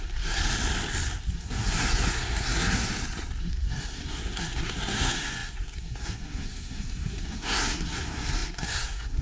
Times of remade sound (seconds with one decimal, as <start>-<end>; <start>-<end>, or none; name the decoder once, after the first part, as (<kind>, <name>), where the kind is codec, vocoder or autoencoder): 0.0-0.4 (codec, SNAC); 1.3-2.9; 3.4-9.2